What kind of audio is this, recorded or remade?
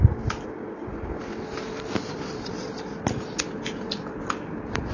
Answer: recorded